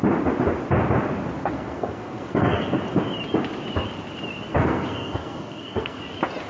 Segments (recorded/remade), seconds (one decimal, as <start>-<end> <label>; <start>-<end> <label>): 0.0-1.4 recorded; 1.4-2.8 remade; 2.8-4.5 recorded; 4.5-6.0 remade; 6.0-6.5 recorded